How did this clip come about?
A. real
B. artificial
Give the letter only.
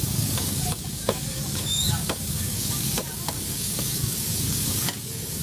B